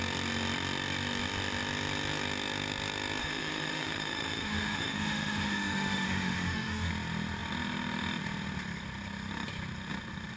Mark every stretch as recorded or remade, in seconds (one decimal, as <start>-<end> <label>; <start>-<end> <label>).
0.0-3.2 recorded; 3.2-6.9 remade; 6.9-10.4 recorded